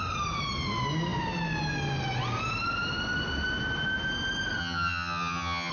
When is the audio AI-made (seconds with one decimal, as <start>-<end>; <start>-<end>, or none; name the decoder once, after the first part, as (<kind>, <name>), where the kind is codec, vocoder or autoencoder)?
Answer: 4.6-5.7 (vocoder, HiFi-GAN)